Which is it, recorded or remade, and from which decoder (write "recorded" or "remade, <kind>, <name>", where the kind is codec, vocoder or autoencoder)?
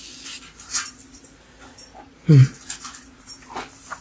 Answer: recorded